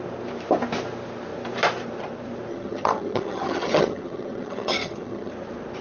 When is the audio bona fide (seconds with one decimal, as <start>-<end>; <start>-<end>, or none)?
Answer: 0.0-2.5; 5.3-5.8